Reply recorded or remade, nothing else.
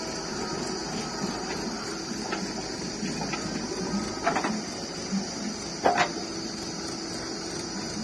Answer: recorded